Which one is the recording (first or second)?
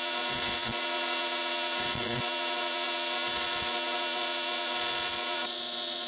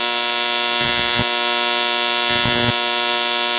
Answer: second